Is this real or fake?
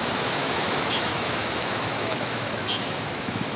fake